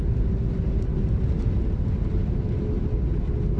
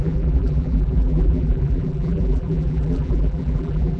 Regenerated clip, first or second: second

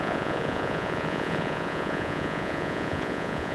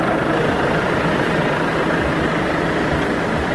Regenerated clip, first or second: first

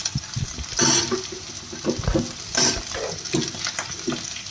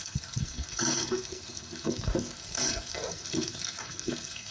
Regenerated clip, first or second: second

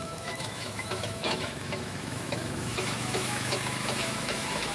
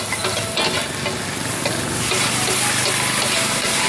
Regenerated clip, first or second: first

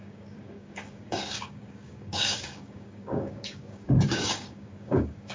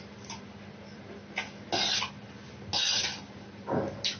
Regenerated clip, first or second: first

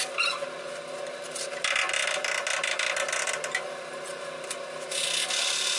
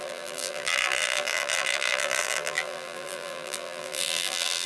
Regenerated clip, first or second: second